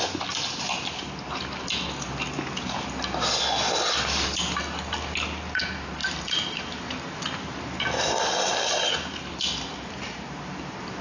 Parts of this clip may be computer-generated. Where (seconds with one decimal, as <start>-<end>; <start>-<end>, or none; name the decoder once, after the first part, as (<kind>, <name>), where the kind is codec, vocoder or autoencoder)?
none